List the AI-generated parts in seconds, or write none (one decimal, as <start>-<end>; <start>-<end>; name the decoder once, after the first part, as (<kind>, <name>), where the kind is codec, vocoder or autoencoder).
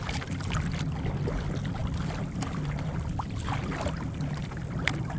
none